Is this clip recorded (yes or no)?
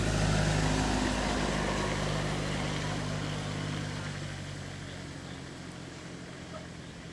yes